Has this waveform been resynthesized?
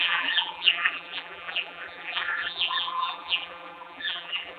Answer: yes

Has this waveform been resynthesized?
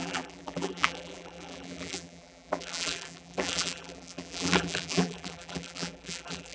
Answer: yes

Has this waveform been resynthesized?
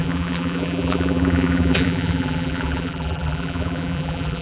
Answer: yes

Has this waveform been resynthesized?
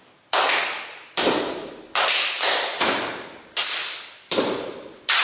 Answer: yes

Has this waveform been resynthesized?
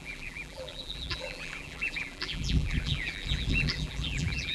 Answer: yes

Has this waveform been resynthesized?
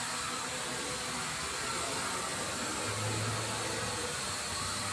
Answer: no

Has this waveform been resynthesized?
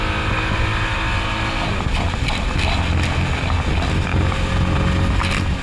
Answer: no